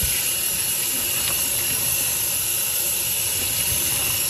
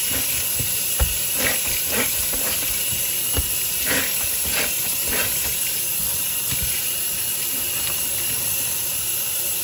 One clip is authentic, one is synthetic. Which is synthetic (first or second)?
second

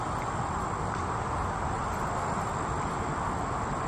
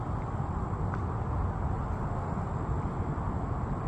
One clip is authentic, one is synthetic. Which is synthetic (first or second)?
second